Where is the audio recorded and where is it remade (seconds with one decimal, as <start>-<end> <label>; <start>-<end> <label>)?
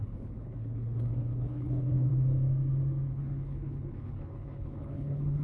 0.0-2.1 remade; 2.1-3.1 recorded; 3.1-5.4 remade